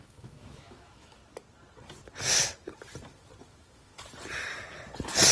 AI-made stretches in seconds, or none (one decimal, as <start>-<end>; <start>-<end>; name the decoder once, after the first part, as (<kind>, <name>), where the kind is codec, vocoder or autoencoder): 0.0-1.2 (autoencoder, DAC-VAE); 3.5-3.9